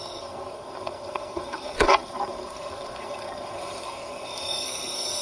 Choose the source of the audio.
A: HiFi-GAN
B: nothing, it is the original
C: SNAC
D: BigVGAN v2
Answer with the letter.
C